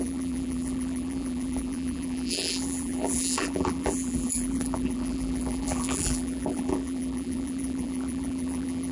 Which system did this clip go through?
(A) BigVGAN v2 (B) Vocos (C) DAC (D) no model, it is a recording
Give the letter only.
A